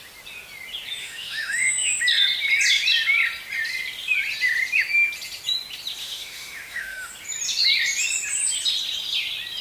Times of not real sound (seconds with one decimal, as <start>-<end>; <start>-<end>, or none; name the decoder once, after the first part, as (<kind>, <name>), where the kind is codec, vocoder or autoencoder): 1.0-2.0 (autoencoder, DAC-VAE); 6.0-7.1